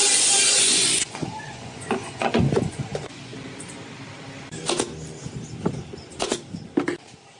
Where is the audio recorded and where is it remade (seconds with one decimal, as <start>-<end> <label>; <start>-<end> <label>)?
0.0-3.3 remade; 3.3-7.4 recorded